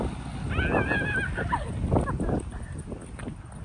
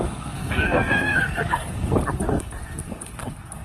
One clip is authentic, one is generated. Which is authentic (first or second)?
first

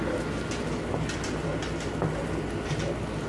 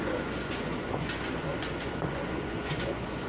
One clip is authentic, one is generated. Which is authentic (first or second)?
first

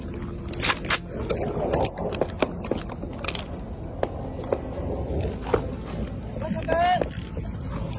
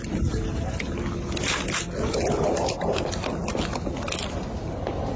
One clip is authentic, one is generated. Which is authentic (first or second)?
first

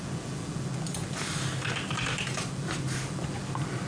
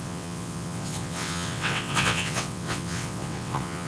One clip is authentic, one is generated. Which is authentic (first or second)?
first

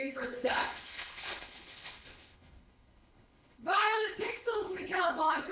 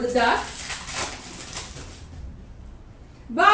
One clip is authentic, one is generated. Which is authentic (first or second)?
second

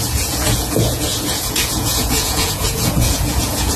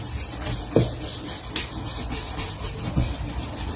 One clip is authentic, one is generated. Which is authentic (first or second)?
second